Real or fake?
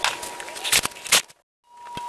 real